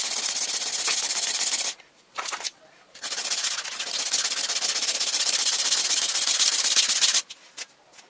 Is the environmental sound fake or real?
real